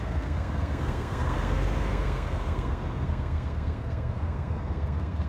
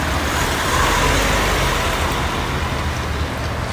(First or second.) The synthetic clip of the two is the first